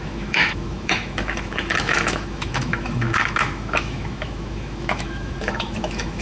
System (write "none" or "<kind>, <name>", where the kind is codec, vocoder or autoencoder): autoencoder, DAC-VAE